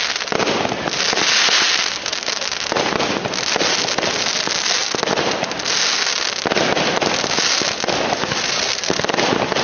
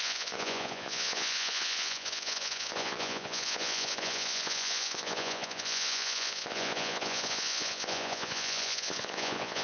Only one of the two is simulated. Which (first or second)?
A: second